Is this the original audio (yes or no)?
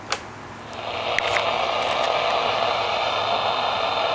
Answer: yes